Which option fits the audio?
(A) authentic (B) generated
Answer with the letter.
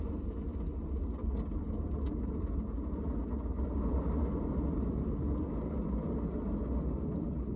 A